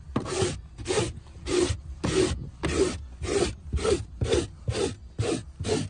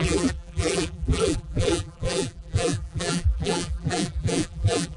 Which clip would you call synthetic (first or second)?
second